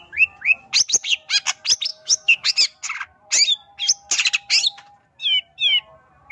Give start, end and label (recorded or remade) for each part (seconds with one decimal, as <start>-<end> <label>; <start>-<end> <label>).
0.0-1.9 recorded; 1.9-2.5 remade; 2.5-6.3 recorded